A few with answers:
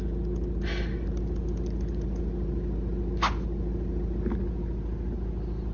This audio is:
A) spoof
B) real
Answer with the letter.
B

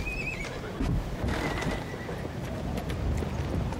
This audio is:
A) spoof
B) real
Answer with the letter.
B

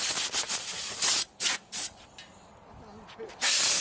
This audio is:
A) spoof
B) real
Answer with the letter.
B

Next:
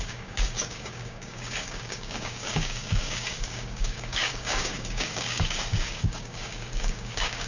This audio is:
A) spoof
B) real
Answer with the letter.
A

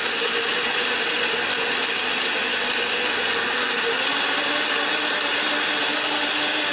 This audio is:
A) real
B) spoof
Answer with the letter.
A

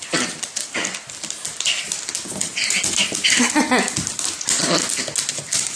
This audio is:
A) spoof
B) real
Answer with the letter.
B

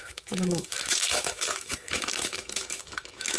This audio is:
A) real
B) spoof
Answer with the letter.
B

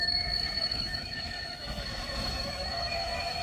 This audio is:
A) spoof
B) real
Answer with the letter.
A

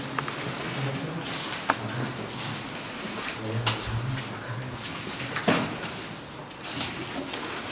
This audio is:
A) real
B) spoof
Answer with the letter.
A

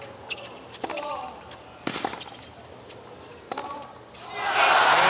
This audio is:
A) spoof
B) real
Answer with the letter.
B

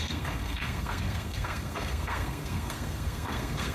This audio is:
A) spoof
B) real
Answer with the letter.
A